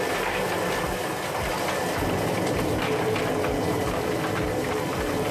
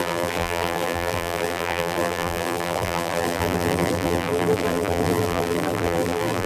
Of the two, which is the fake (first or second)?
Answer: second